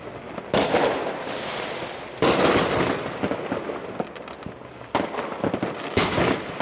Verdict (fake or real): real